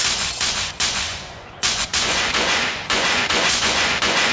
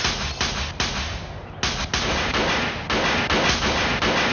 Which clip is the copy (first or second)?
first